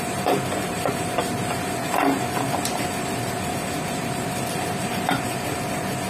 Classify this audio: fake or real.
real